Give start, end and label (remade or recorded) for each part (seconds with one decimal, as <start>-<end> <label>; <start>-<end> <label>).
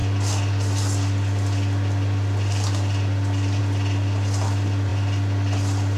0.0-6.0 recorded